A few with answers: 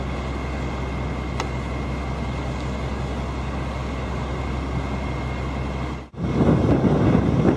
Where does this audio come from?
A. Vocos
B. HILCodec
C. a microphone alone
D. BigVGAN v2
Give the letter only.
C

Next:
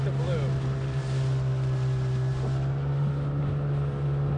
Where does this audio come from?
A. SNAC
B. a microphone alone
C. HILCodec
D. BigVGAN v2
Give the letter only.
B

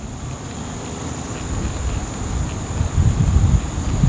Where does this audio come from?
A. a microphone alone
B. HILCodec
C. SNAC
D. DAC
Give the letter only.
A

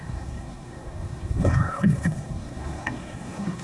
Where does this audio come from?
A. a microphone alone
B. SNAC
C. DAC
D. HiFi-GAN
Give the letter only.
B